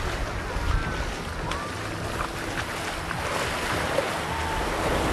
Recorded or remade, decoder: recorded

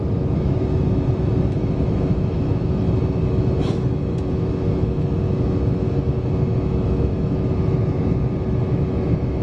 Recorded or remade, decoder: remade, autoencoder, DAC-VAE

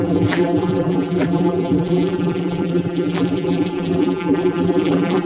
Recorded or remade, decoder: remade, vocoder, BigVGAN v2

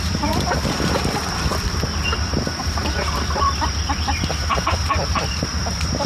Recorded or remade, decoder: recorded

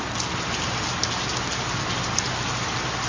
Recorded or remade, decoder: recorded